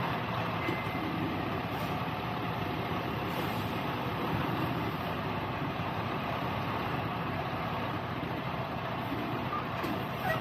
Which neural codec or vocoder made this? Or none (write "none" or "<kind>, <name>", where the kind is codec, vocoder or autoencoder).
vocoder, BigVGAN v2